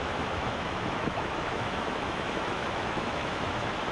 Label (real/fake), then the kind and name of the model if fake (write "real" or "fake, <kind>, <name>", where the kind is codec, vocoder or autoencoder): fake, autoencoder, DAC-VAE